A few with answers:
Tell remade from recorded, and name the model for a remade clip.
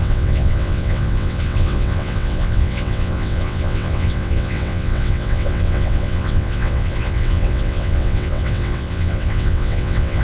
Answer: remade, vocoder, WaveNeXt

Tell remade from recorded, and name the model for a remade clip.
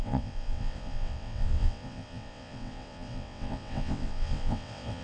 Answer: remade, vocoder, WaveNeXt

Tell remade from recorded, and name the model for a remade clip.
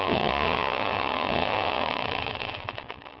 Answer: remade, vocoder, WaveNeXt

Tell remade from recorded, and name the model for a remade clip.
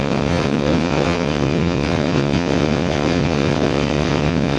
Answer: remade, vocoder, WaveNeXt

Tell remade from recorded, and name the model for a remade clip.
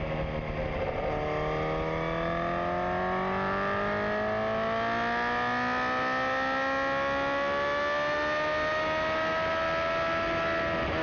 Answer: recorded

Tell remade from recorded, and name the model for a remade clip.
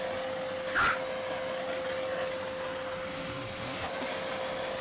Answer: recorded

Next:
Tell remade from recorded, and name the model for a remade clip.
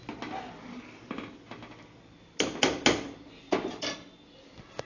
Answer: recorded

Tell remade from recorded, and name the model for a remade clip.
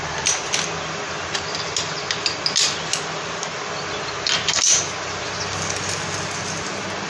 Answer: recorded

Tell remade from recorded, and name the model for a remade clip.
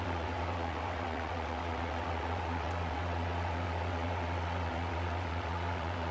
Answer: remade, vocoder, WaveNeXt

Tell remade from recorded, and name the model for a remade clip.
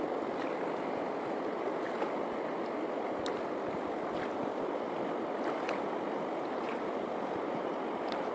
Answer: recorded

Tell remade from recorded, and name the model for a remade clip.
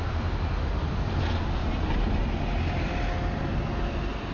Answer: recorded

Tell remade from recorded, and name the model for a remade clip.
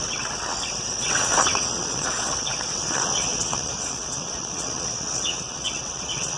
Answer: remade, vocoder, WaveNeXt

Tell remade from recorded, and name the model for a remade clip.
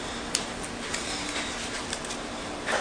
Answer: recorded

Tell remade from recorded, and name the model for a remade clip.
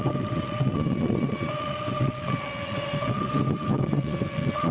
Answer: remade, vocoder, WaveNeXt